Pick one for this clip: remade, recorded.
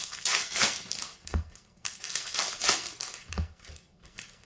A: remade